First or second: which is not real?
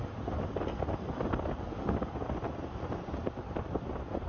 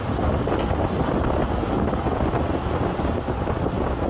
first